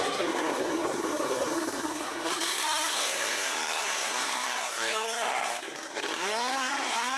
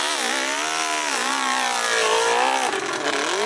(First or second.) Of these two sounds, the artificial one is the first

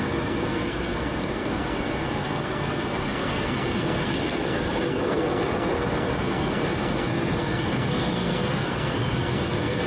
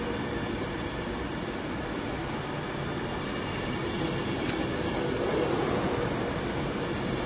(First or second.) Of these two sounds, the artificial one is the first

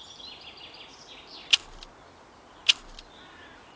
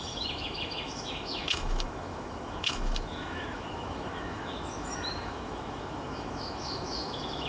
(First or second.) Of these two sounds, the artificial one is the second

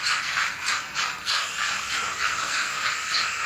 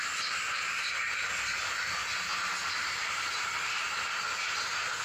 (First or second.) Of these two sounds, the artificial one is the first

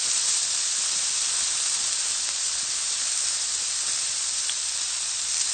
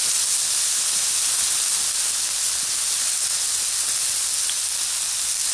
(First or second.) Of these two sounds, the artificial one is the first